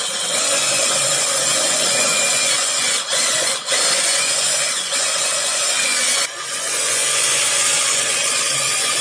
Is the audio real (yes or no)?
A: no